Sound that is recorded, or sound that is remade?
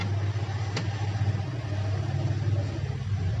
recorded